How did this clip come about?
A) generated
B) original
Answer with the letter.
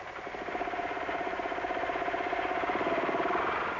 B